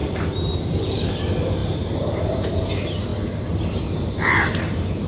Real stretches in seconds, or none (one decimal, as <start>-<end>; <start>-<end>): 0.8-1.6; 2.4-3.1; 4.6-5.1